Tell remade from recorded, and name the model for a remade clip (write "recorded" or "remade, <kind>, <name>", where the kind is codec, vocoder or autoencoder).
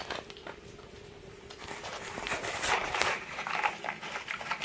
recorded